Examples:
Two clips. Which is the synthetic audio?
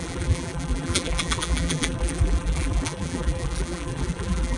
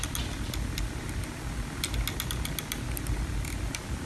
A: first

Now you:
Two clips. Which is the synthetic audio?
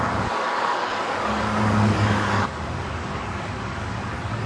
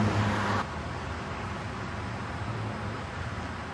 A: first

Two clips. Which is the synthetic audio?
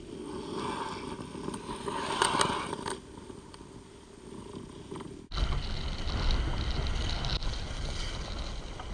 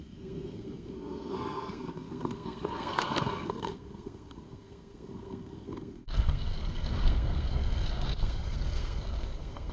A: second